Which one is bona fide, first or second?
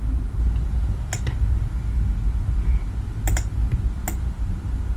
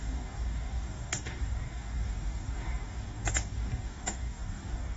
first